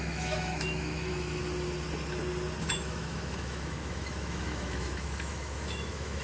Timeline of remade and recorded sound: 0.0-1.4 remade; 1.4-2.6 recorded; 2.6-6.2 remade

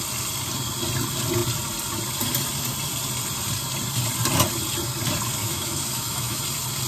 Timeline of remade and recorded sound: 0.0-5.4 recorded; 5.4-6.4 remade; 6.4-6.9 recorded

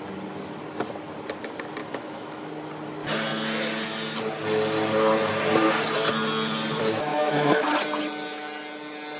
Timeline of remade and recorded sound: 0.0-1.8 recorded; 1.8-2.5 remade; 2.5-7.1 recorded; 7.1-7.7 remade; 7.7-9.2 recorded